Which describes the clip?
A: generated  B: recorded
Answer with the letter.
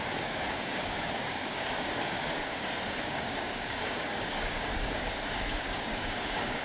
A